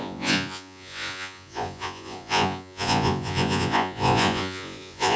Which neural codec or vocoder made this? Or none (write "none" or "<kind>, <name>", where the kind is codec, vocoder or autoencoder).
vocoder, Vocos